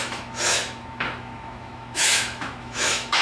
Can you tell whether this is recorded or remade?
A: remade